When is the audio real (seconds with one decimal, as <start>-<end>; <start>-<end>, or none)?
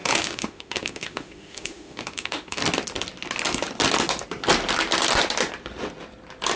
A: 2.6-6.6